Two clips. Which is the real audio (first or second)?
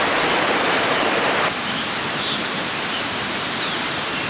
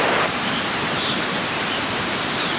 first